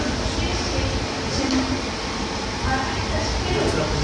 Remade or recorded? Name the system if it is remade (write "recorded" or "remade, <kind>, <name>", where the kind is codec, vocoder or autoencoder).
recorded